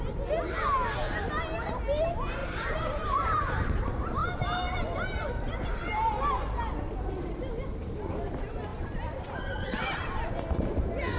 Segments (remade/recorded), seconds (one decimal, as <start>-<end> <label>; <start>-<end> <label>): 0.0-2.4 recorded; 2.4-3.4 remade; 3.4-4.2 recorded; 4.2-6.7 remade; 6.7-8.7 recorded; 8.7-10.3 remade; 10.3-11.2 recorded